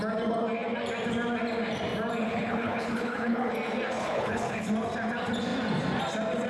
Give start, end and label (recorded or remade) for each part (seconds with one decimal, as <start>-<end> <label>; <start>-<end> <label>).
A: 0.0-2.2 recorded; 2.2-3.5 remade; 3.5-4.0 recorded; 4.0-4.7 remade; 4.7-6.5 recorded